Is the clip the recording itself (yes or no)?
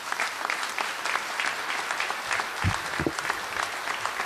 yes